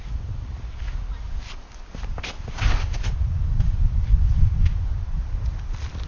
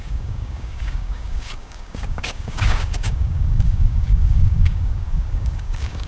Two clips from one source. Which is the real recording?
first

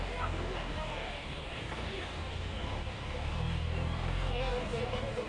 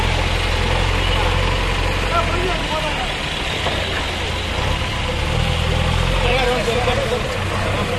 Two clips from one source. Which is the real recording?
second